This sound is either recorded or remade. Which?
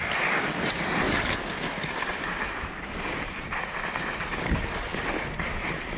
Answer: recorded